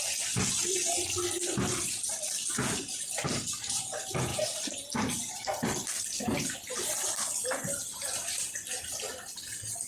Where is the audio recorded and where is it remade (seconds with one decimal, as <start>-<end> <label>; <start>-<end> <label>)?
0.0-9.9 recorded